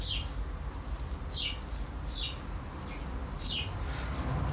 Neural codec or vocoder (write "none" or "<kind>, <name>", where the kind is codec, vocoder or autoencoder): none